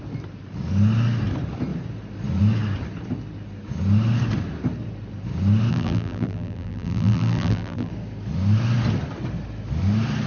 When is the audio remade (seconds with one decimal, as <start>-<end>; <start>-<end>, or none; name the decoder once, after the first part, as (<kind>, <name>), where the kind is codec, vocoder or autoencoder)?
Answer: 5.7-7.9 (vocoder, BigVGAN v2)